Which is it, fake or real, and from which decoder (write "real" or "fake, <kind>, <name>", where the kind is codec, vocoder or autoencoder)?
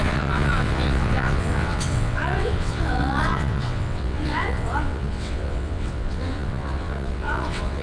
fake, vocoder, WaveNeXt